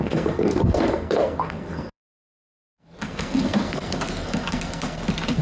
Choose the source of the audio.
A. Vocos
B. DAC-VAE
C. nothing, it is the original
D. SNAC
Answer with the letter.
D